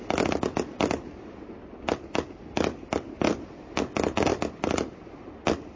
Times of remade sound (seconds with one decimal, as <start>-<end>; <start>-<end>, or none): none